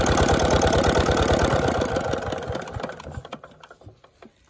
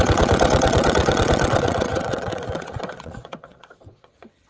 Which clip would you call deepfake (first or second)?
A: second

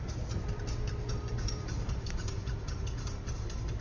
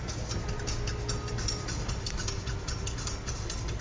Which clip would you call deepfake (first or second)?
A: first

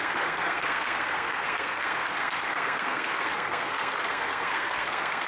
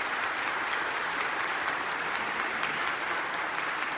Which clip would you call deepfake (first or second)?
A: first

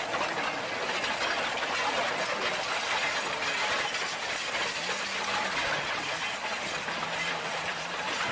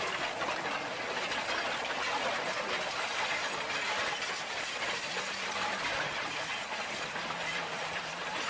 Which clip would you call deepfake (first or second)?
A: second